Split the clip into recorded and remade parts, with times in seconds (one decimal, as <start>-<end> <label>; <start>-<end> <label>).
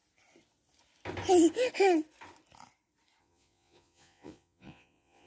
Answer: 0.0-3.2 recorded; 3.2-5.3 remade